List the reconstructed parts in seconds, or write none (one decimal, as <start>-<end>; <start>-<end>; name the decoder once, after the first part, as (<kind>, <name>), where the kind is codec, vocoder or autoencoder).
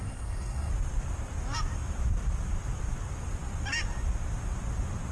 0.0-0.7 (codec, SNAC)